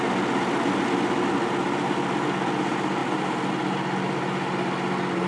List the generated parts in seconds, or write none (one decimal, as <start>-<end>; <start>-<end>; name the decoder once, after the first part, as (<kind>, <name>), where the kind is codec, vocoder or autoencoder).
3.0-3.5 (vocoder, BigVGAN v2)